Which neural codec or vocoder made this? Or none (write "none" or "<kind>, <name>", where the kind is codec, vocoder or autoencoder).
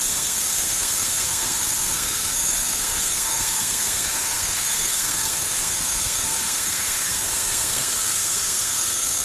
codec, SNAC